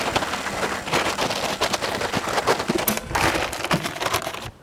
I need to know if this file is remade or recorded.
recorded